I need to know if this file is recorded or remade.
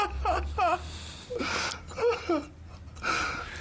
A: recorded